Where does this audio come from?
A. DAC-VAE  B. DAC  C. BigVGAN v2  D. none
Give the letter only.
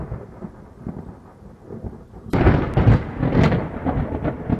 D